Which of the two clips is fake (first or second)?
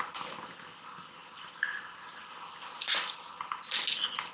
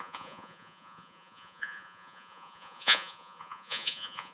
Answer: second